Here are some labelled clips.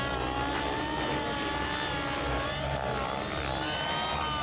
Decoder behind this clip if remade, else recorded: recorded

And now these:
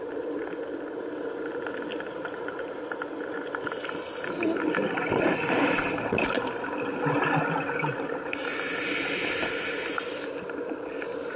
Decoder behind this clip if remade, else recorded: recorded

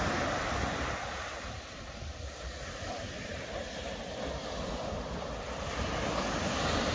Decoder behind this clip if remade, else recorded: recorded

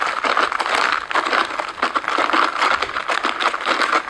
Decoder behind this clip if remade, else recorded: recorded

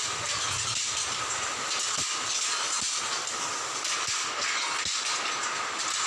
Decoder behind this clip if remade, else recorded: recorded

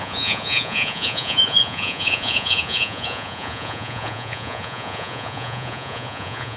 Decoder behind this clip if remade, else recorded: remade, vocoder, Vocos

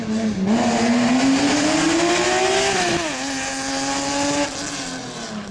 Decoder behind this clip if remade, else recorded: recorded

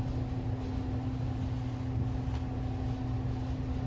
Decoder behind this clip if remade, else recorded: recorded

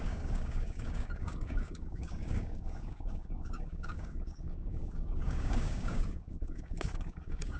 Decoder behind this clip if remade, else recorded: remade, codec, DAC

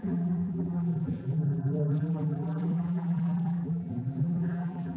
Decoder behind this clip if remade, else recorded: remade, vocoder, BigVGAN v2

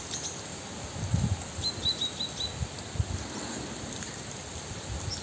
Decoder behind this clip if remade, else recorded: recorded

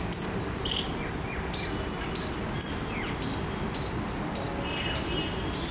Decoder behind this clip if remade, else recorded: recorded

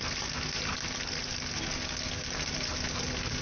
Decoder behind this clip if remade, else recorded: recorded